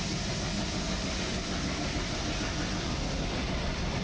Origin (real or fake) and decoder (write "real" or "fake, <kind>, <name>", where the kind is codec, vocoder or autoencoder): real